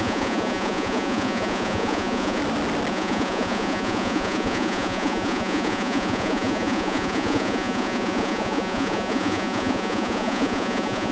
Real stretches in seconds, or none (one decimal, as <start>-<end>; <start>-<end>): 2.4-2.9